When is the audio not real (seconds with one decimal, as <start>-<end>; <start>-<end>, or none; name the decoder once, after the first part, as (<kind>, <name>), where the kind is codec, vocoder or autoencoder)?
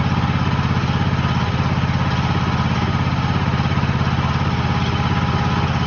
none